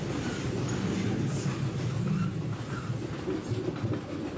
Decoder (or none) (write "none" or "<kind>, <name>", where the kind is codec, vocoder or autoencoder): none